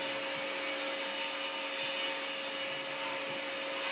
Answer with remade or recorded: recorded